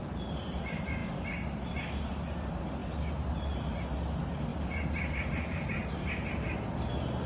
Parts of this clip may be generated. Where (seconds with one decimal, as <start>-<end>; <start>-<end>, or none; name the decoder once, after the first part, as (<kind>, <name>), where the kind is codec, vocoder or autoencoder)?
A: none